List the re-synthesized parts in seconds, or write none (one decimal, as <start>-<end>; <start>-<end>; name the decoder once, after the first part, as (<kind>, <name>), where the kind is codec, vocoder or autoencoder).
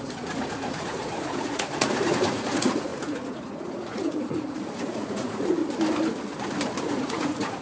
0.0-5.6 (vocoder, Vocos); 6.8-7.6